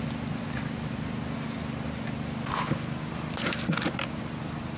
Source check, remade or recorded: recorded